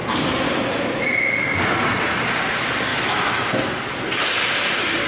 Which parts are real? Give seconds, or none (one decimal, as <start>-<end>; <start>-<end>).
0.0-2.9; 3.6-5.1